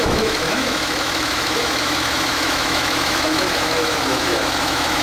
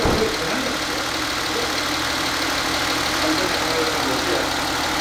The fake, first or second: first